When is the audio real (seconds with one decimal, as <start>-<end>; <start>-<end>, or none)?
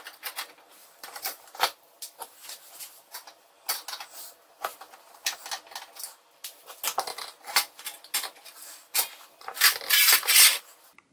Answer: 0.0-0.8; 3.5-11.1